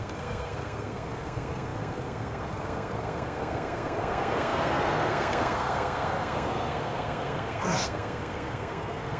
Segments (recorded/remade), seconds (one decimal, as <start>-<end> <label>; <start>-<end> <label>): 0.0-9.2 remade